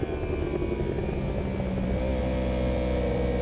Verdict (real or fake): real